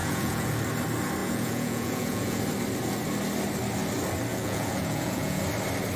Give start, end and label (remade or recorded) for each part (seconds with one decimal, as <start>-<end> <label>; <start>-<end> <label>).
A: 0.0-0.5 remade; 0.5-1.2 recorded; 1.2-2.4 remade; 2.4-4.3 recorded; 4.3-5.4 remade; 5.4-6.0 recorded